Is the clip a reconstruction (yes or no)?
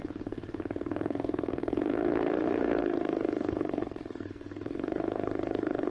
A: yes